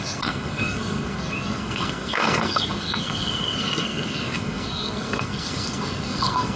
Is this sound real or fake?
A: fake